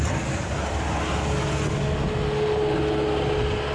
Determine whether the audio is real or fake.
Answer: real